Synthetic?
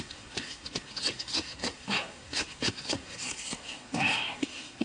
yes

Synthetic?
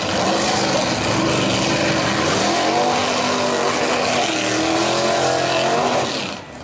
no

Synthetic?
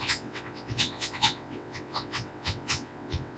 yes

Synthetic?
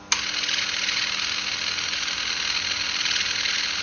no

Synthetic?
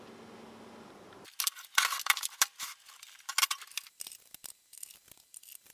no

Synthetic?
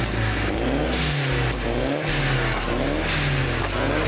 no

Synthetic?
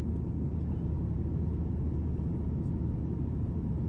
no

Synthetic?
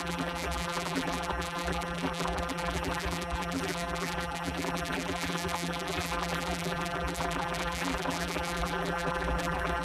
yes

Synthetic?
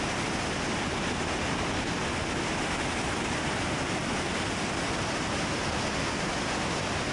no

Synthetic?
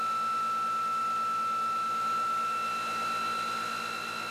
no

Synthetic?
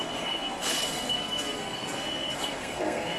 yes